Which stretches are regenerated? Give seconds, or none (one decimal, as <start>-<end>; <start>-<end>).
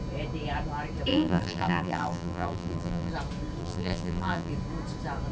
1.1-3.1; 3.6-4.5